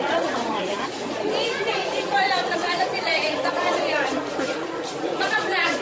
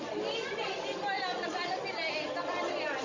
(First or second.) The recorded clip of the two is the second